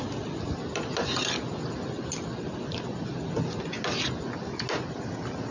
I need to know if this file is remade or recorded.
recorded